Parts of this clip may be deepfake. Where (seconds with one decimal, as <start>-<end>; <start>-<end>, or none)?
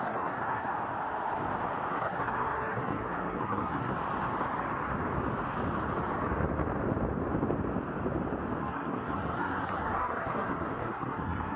0.0-0.7; 1.9-3.9; 8.6-11.6